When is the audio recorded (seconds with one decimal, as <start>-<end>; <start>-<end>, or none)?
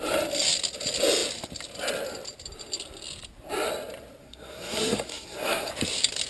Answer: 0.0-4.2; 5.7-6.3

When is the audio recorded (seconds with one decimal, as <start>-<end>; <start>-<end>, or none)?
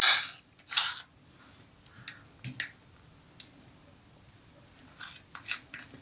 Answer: 0.0-6.0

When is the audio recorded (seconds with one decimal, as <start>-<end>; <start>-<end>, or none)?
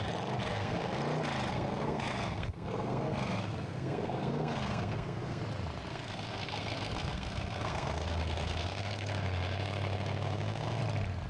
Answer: 0.0-0.4; 1.0-1.5; 5.4-5.9; 10.8-11.3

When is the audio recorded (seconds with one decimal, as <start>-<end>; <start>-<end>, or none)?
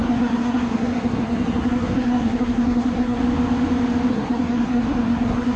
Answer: 3.2-4.1